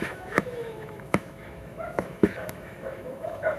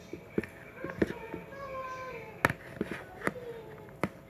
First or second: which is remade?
first